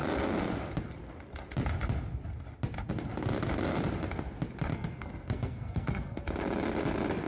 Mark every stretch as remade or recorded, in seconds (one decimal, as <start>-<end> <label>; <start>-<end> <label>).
0.0-4.7 recorded; 4.7-6.2 remade; 6.2-7.3 recorded